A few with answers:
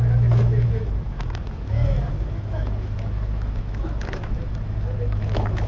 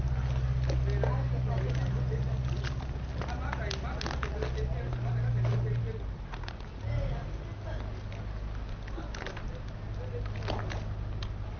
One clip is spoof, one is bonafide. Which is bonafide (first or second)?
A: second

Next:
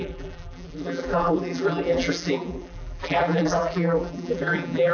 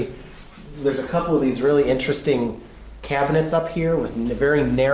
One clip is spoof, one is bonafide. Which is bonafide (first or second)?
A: second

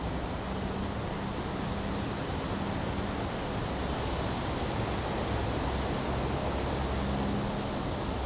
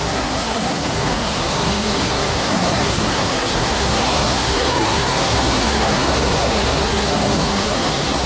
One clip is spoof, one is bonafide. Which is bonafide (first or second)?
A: first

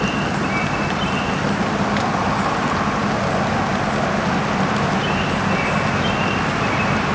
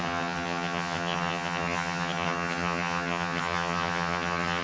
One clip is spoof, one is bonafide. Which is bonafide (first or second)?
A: first